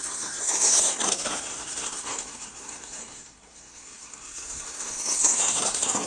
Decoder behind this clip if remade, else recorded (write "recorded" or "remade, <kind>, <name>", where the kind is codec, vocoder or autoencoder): remade, codec, SNAC